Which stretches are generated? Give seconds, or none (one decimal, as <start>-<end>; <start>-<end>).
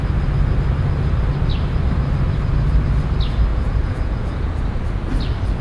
3.5-4.6